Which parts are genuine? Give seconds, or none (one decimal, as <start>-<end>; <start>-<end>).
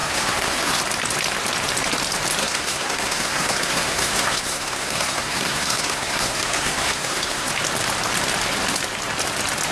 0.8-2.4; 7.5-9.7